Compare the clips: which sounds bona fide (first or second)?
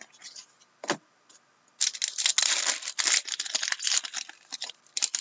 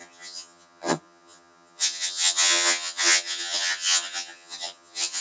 first